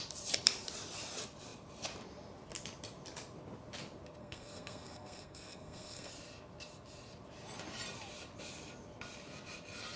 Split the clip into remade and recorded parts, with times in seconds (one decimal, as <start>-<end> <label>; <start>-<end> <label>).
0.0-4.2 recorded; 4.2-6.1 remade; 6.1-10.0 recorded